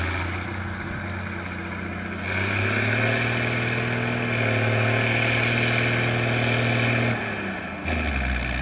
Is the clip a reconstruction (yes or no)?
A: no